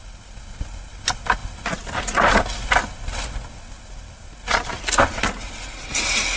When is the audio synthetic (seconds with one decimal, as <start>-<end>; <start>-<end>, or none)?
1.4-5.2